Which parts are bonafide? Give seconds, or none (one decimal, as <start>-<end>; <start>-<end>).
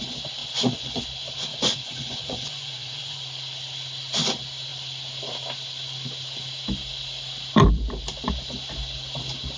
0.0-0.4; 1.0-1.5; 3.2-9.6